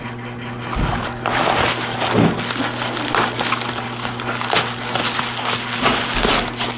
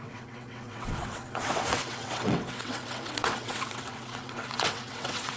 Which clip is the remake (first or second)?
second